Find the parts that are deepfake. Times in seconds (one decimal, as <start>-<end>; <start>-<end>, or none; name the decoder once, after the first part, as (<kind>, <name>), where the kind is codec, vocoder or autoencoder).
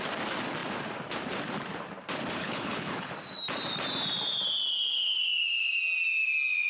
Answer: 2.4-3.1 (codec, HILCodec)